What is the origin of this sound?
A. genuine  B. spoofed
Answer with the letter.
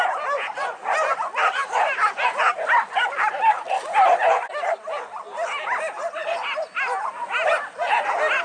A